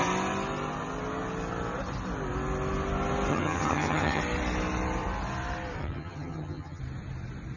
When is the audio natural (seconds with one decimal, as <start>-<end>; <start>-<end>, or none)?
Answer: 0.0-3.3; 4.2-5.8; 6.8-7.6